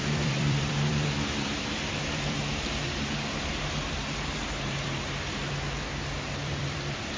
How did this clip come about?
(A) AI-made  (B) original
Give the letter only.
A